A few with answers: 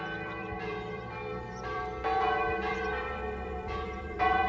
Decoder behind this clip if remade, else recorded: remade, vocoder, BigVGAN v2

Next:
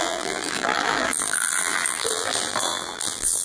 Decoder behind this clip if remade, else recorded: remade, vocoder, BigVGAN v2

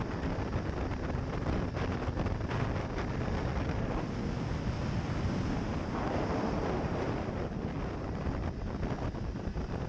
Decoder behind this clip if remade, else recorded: remade, vocoder, BigVGAN v2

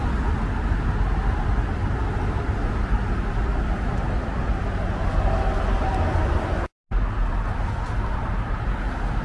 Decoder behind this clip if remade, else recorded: recorded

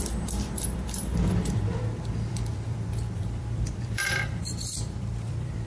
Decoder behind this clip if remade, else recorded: remade, vocoder, BigVGAN v2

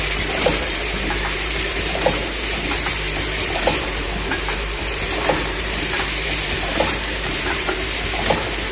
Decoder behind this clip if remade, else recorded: remade, vocoder, BigVGAN v2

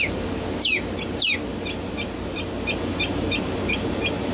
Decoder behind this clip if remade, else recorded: recorded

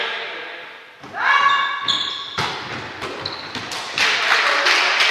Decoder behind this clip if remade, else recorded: recorded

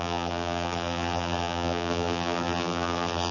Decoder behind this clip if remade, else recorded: remade, vocoder, BigVGAN v2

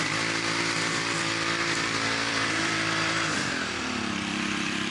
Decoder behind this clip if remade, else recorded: remade, vocoder, BigVGAN v2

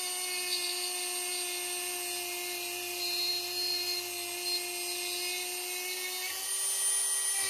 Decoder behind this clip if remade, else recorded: recorded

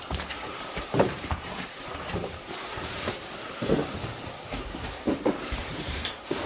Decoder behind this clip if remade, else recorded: remade, vocoder, BigVGAN v2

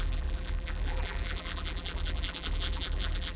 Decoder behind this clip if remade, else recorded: remade, vocoder, BigVGAN v2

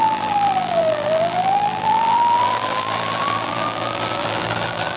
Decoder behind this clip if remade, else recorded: remade, vocoder, BigVGAN v2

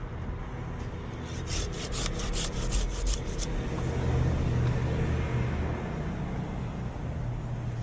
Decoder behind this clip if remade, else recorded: recorded